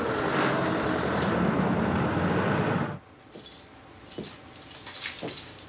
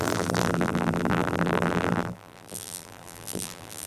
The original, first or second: first